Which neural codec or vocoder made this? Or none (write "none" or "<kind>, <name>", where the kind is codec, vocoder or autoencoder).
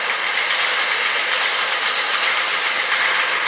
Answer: none